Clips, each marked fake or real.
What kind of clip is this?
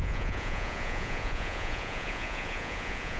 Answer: fake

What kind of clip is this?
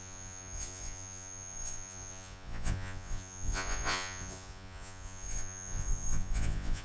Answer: fake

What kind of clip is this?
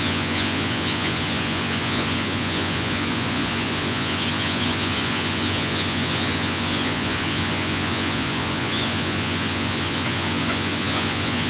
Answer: fake